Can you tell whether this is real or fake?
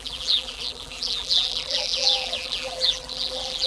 fake